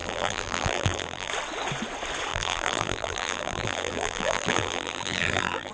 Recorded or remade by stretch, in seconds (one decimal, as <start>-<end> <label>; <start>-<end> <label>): 0.0-1.3 remade; 1.3-2.3 recorded; 2.3-5.7 remade